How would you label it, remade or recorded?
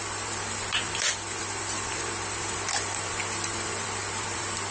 remade